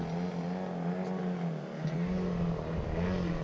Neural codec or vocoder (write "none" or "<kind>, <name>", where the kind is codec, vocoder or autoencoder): none